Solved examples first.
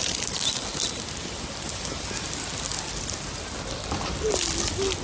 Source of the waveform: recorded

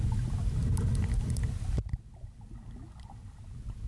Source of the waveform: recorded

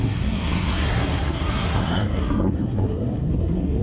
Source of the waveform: remade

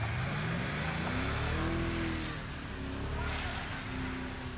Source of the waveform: recorded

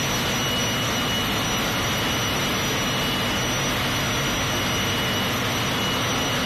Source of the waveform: recorded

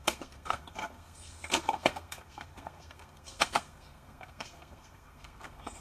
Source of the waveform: remade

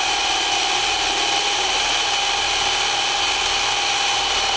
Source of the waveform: recorded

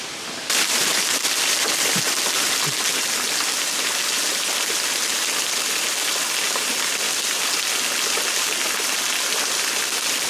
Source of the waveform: recorded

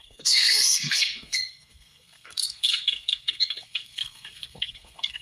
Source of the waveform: remade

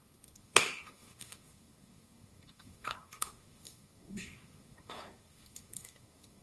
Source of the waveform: remade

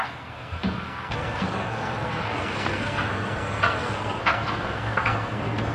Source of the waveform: remade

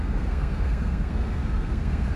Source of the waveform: remade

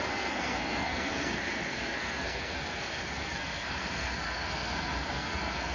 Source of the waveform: remade